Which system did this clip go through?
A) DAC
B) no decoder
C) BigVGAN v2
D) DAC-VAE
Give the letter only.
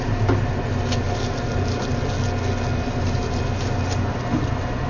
B